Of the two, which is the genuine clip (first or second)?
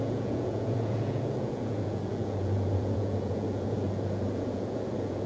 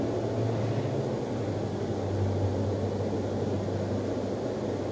second